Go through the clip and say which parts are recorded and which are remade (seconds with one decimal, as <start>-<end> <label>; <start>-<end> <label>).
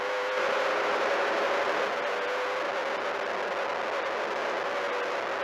0.0-5.4 recorded